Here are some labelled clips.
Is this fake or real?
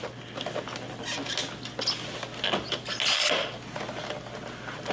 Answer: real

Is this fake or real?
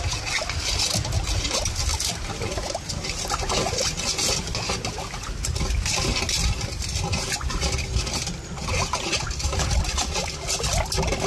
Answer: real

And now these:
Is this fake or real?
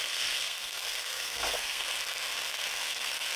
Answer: fake